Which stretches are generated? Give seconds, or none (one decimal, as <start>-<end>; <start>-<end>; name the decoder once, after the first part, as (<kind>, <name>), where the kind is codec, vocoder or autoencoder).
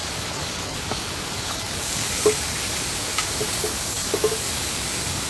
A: 0.0-5.3 (codec, DAC)